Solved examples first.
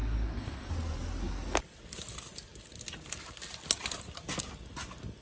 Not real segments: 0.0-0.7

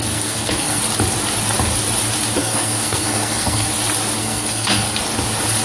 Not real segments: 0.0-0.8; 2.4-3.7; 4.2-5.0

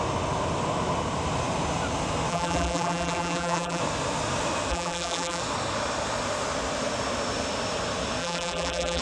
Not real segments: 2.3-3.8; 4.7-5.4; 8.2-9.0

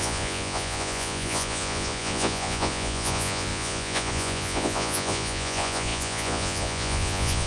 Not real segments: 0.0-7.5